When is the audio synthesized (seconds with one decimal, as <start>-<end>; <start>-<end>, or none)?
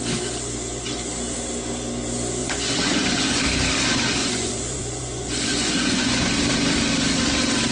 2.4-3.4; 4.2-6.3